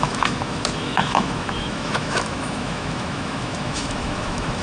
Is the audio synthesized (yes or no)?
yes